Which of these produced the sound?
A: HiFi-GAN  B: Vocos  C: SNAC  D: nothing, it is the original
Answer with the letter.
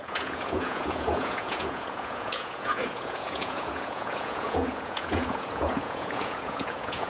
B